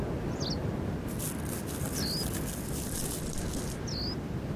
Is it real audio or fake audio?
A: real